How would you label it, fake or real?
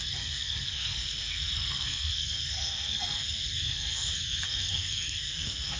fake